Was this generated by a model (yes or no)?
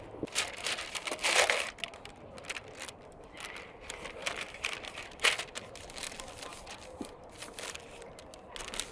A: no